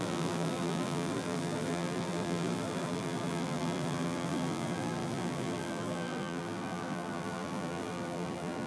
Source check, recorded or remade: remade